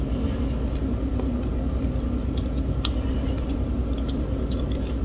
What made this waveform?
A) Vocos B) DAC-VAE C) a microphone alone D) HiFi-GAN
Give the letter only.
C